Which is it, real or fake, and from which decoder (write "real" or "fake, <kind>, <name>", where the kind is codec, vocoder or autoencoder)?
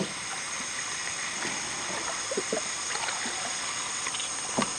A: real